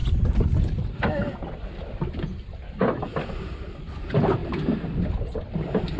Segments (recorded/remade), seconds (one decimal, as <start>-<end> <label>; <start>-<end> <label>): 0.0-6.0 recorded